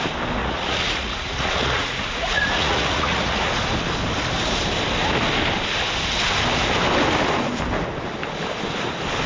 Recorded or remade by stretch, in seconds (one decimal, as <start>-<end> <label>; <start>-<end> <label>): 0.0-0.4 recorded; 0.4-3.5 remade; 3.5-9.3 recorded